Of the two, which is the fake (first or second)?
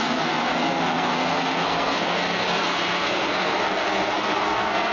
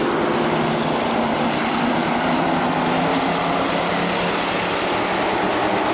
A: first